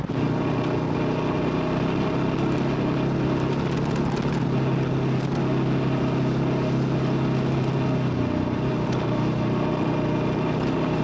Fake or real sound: real